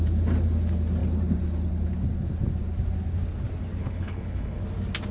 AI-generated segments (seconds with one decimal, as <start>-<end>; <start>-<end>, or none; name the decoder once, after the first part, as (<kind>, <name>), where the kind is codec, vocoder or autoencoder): 3.8-4.6 (codec, HILCodec)